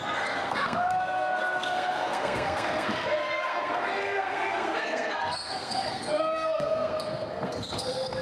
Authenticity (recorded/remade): remade